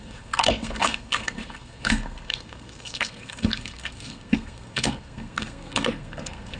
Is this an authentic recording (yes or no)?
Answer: no